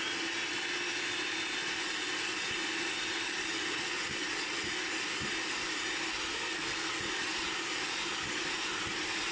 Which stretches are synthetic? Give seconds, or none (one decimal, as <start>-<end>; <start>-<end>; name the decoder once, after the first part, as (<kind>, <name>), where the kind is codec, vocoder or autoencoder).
6.3-6.9 (codec, SNAC)